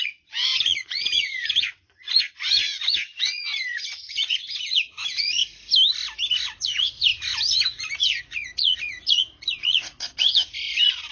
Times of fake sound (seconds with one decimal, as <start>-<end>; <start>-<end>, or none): 0.0-5.4; 6.3-11.1